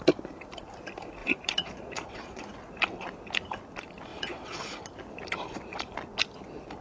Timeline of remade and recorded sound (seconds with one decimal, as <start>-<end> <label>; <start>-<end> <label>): 0.0-1.2 recorded; 1.2-2.4 remade; 2.4-4.1 recorded; 4.1-4.7 remade; 4.7-6.8 recorded